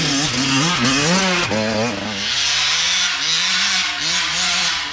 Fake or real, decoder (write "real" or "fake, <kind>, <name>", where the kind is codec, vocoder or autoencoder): real